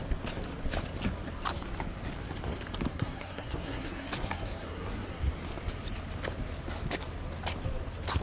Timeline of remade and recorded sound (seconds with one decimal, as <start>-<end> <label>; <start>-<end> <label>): 0.0-2.9 recorded; 2.9-5.2 remade; 5.2-8.2 recorded